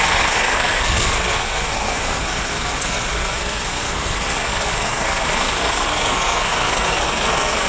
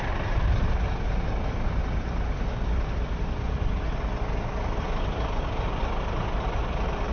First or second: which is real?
second